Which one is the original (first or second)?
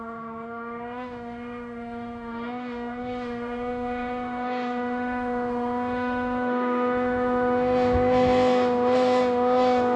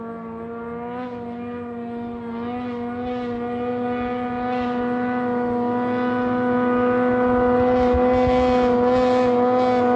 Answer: second